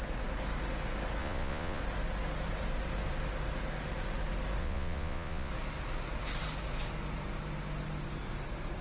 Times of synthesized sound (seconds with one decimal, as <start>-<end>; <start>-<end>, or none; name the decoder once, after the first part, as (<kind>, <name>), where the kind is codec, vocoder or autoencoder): 1.2-1.8 (vocoder, Vocos); 4.6-5.5